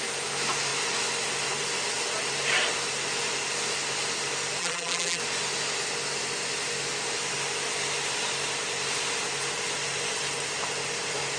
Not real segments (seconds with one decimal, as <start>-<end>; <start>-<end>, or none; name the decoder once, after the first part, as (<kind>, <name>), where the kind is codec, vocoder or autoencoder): 4.6-5.2 (vocoder, BigVGAN v2)